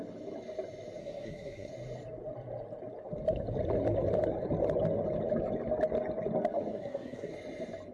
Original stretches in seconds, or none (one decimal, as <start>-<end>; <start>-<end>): 0.0-1.0; 1.7-6.7; 7.3-7.9